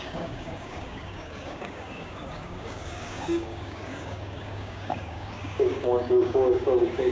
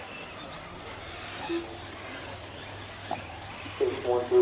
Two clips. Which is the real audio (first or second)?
second